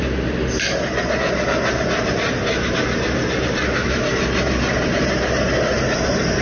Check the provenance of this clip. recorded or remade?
recorded